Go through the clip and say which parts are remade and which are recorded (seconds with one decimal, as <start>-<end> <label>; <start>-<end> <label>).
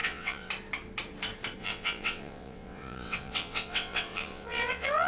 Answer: 0.0-0.5 remade; 0.5-1.6 recorded; 1.6-5.1 remade